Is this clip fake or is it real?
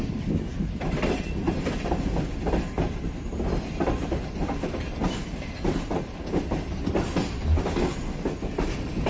real